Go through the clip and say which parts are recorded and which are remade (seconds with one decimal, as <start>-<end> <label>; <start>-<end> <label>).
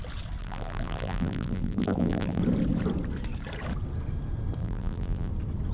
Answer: 0.0-0.4 recorded; 0.4-2.4 remade; 2.4-4.6 recorded; 4.6-5.3 remade; 5.3-5.7 recorded